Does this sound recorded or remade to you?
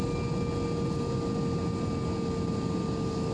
recorded